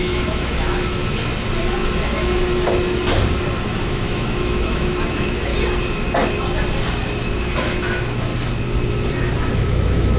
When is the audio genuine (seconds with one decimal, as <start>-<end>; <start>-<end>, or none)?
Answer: 1.0-3.8; 5.5-7.3; 8.3-9.4